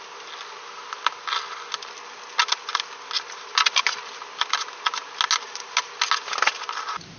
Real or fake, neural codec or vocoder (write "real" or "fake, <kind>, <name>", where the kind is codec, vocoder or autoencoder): real